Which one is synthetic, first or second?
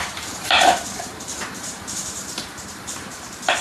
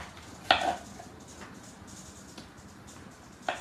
first